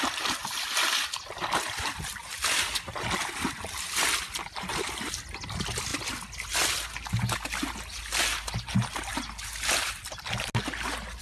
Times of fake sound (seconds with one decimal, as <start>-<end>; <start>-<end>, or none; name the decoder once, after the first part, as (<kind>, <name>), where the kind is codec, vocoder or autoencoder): none